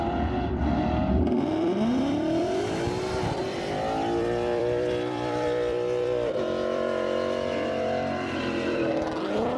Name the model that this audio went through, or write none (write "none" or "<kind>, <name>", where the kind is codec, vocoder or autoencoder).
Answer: vocoder, BigVGAN v2